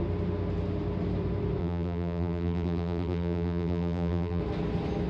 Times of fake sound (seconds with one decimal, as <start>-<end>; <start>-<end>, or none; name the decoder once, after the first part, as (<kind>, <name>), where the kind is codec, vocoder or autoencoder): 1.6-4.4 (vocoder, BigVGAN v2)